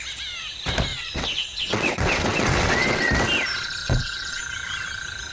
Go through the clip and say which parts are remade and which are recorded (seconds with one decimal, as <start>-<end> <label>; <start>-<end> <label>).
0.0-0.9 recorded; 0.9-3.1 remade; 3.1-3.8 recorded; 3.8-4.4 remade; 4.4-5.3 recorded